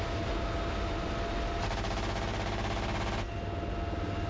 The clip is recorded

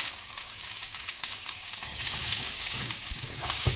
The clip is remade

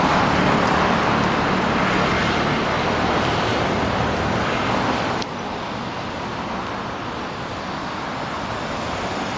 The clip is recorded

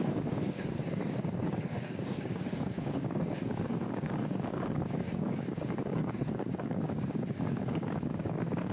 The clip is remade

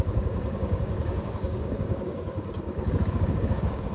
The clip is remade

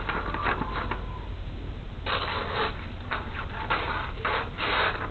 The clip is recorded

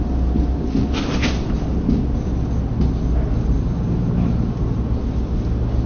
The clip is recorded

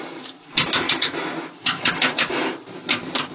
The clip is recorded